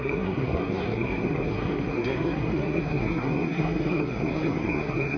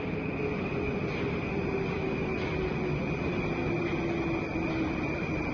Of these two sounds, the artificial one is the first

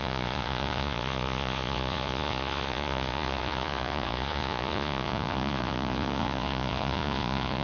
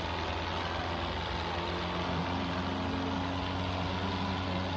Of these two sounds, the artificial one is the first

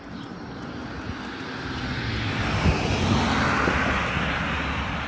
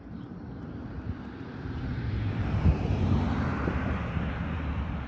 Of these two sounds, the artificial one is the second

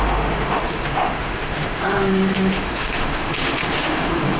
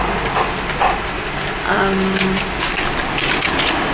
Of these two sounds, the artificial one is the first